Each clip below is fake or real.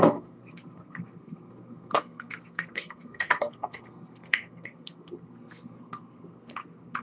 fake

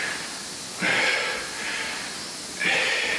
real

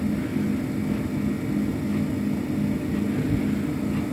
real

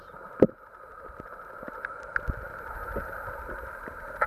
real